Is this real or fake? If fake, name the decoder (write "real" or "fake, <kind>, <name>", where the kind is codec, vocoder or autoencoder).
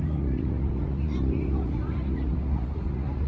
fake, vocoder, Vocos